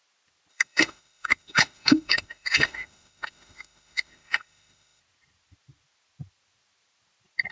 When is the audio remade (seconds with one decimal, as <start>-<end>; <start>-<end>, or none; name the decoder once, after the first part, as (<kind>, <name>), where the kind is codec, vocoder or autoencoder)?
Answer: 0.5-5.0 (autoencoder, DAC-VAE)